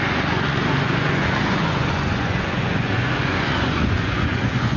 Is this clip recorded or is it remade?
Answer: remade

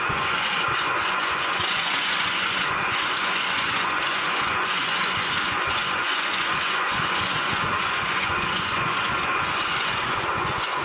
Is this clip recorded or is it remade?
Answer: remade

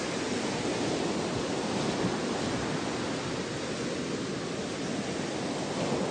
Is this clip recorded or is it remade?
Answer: recorded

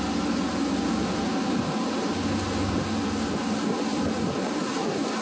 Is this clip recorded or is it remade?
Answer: recorded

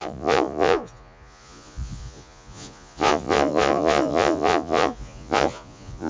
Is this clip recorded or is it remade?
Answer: remade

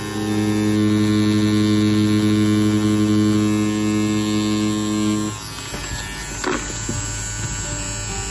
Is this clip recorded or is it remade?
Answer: recorded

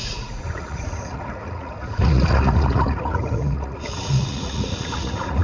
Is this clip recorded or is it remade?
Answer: remade